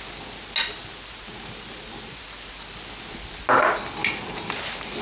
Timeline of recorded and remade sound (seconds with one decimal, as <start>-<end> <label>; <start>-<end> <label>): 0.0-0.8 recorded; 0.8-2.2 remade; 2.2-4.0 recorded; 4.0-5.0 remade